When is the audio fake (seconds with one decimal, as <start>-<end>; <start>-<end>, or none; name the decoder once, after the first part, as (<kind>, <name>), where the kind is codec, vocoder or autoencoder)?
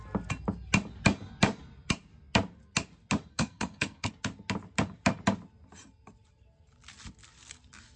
3.3-4.1 (codec, SNAC)